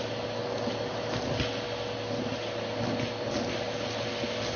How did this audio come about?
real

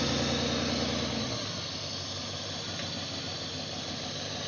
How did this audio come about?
real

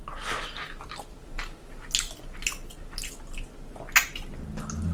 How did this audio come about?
real